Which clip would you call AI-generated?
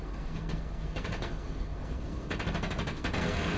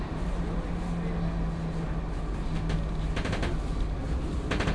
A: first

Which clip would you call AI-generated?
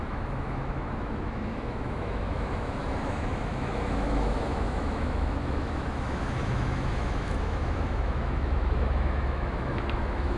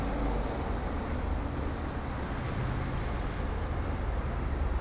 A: first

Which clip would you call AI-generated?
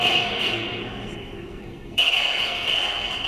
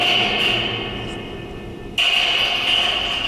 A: first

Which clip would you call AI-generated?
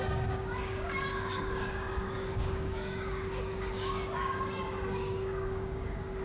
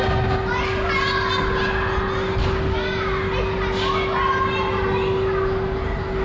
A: first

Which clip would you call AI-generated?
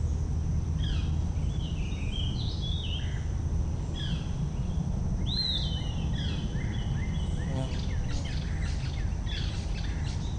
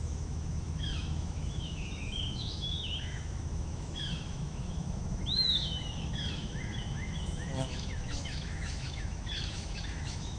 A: second